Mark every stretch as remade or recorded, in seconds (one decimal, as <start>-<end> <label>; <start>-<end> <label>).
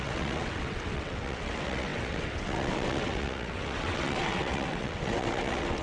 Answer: 0.0-5.8 remade